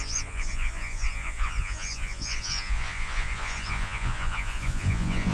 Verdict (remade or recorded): remade